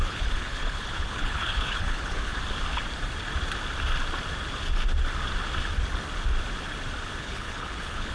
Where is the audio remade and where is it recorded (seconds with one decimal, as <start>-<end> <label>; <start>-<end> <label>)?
0.0-2.3 remade; 2.3-7.2 recorded; 7.2-8.1 remade